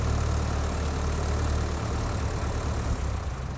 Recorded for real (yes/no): yes